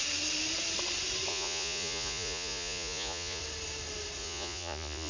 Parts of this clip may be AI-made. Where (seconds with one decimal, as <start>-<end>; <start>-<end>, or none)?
1.3-3.4; 4.2-5.1